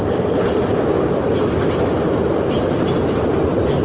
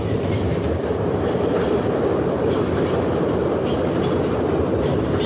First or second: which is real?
first